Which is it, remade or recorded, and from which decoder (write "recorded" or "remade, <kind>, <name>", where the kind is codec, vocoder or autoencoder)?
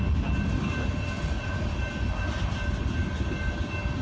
recorded